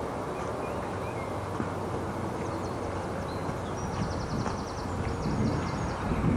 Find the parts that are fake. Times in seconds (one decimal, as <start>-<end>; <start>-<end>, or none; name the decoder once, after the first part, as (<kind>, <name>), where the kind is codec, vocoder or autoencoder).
none

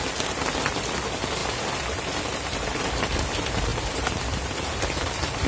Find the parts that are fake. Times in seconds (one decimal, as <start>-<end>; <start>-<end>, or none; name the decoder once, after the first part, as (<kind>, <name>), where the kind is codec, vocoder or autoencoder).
none